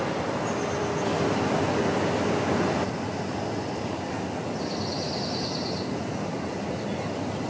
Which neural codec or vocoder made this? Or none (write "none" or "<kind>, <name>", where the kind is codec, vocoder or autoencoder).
none